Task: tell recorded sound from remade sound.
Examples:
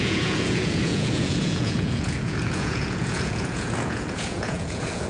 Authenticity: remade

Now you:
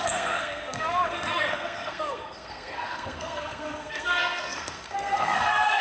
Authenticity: remade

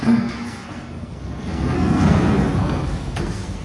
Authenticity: remade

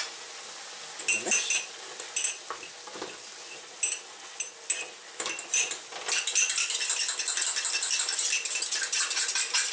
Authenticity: recorded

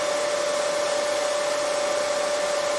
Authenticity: recorded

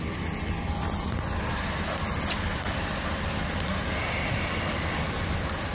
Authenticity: recorded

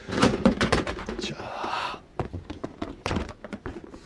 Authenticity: remade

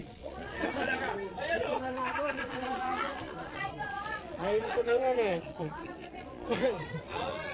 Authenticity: remade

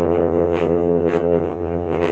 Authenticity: remade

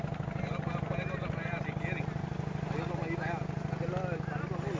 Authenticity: recorded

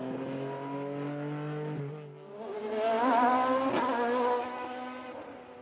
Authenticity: recorded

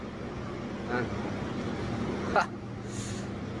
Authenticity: recorded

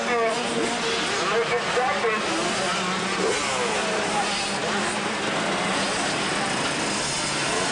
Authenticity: recorded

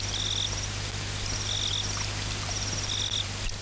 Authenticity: recorded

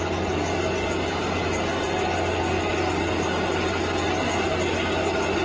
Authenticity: recorded